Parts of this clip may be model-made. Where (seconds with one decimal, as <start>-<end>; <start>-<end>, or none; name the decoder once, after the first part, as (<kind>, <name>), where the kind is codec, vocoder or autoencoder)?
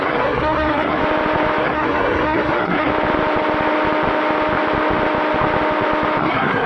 0.0-1.0 (codec, SNAC); 1.6-2.9; 6.2-6.7